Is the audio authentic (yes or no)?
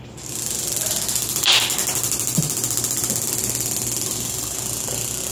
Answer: no